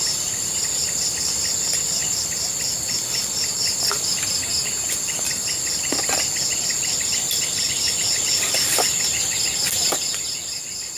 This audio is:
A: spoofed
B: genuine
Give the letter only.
B